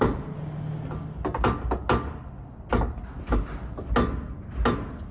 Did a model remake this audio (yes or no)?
no